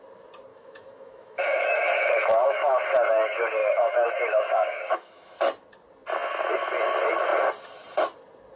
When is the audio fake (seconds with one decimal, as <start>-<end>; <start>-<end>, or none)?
0.5-2.8; 3.6-5.4